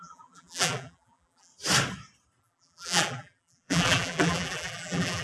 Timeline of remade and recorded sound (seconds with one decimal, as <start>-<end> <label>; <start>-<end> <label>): 0.0-1.5 remade; 1.5-2.4 recorded; 2.4-5.2 remade

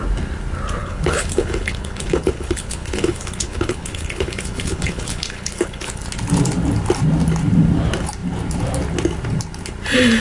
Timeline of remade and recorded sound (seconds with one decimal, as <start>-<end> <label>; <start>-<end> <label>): 0.0-0.8 recorded; 0.8-6.0 remade; 6.0-10.2 recorded

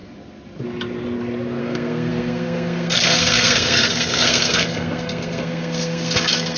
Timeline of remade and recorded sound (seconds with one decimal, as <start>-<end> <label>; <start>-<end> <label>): 0.0-1.6 recorded; 1.6-6.6 remade

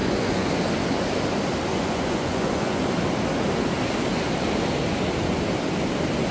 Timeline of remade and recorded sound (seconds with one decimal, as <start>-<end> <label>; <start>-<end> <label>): 0.0-0.5 remade; 0.5-1.7 recorded; 1.7-2.9 remade; 2.9-6.3 recorded